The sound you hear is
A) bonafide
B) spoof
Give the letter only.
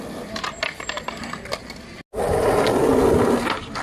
A